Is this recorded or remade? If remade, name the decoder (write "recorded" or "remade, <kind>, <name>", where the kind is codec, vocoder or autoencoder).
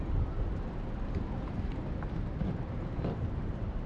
recorded